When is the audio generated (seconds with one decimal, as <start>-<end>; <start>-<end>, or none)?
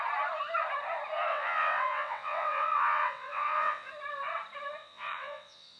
1.3-3.9; 4.8-5.8